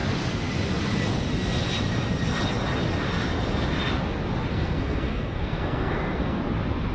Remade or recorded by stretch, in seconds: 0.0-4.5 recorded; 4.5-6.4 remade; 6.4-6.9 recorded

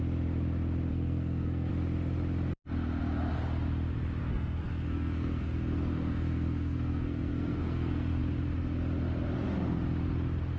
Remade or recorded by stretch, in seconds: 0.0-0.9 recorded; 0.9-1.7 remade; 1.7-4.2 recorded; 4.2-8.2 remade; 8.2-10.6 recorded

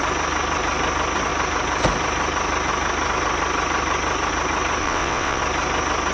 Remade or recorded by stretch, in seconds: 0.0-4.8 recorded; 4.8-5.4 remade; 5.4-6.1 recorded

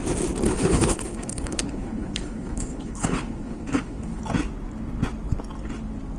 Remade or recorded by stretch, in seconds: 0.0-0.5 recorded; 0.5-4.2 remade; 4.2-6.2 recorded

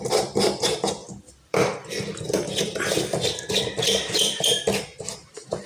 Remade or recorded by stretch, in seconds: 0.0-1.0 recorded; 1.0-4.4 remade; 4.4-5.7 recorded

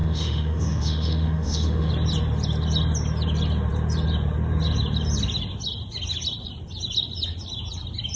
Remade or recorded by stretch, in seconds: 0.0-1.9 remade; 1.9-8.2 recorded

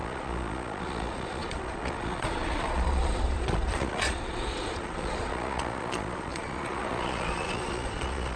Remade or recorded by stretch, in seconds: 0.0-8.4 remade